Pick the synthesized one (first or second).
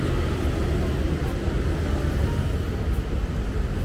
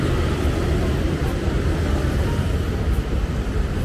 second